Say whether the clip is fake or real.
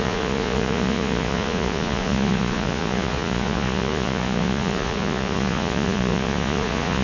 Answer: fake